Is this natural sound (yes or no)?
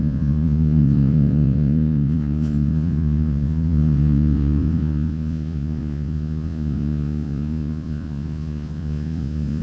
no